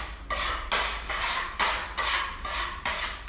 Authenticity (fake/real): real